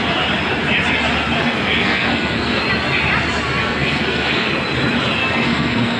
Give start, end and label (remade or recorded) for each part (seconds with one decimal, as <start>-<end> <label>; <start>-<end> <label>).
0.0-1.4 recorded; 1.4-2.6 remade; 2.6-3.6 recorded; 3.6-4.5 remade; 4.5-5.2 recorded; 5.2-6.0 remade